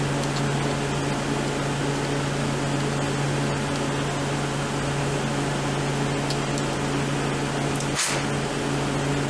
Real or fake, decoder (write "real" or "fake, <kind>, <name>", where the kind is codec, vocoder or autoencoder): real